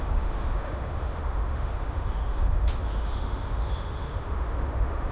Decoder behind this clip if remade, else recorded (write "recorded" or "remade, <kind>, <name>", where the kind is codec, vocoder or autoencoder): remade, autoencoder, DAC-VAE